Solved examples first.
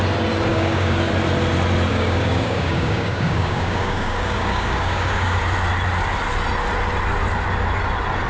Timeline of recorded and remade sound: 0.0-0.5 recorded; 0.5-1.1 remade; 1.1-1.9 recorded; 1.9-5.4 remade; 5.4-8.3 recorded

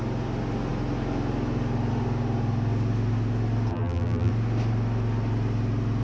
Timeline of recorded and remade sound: 0.0-3.7 recorded; 3.7-4.3 remade; 4.3-6.0 recorded

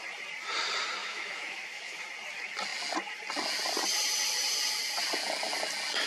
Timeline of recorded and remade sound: 0.0-1.0 recorded; 1.0-2.0 remade; 2.0-6.1 recorded

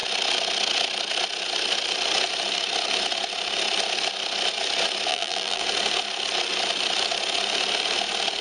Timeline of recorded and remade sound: 0.0-5.1 recorded; 5.1-5.6 remade; 5.6-8.4 recorded

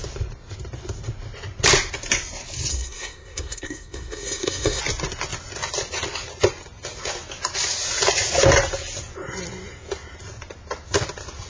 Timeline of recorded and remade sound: 0.0-2.7 recorded; 2.7-4.8 remade; 4.8-11.5 recorded

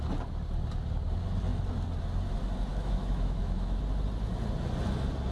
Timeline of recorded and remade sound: 0.0-2.7 recorded; 2.7-3.8 remade; 3.8-5.3 recorded

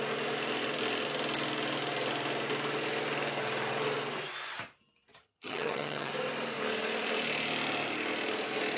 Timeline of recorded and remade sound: 0.0-5.1 recorded; 5.1-6.1 remade; 6.1-8.8 recorded

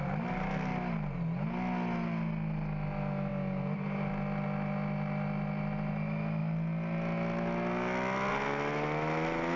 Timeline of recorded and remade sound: 0.0-9.6 recorded